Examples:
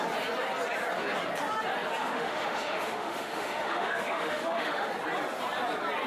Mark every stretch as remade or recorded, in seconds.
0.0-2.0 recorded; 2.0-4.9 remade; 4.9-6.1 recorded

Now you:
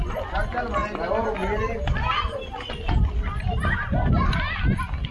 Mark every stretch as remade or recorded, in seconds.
0.0-5.1 recorded

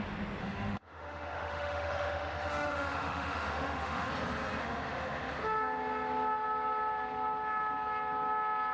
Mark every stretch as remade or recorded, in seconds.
0.0-0.4 recorded; 0.4-4.1 remade; 4.1-4.6 recorded; 4.6-5.3 remade; 5.3-8.7 recorded